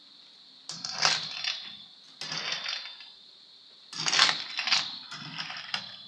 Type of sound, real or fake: real